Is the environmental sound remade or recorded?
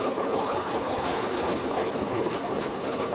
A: remade